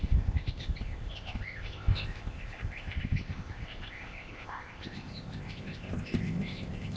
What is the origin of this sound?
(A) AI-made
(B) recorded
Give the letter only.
A